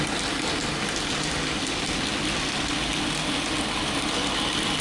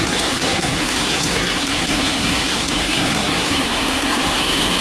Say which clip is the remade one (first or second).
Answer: second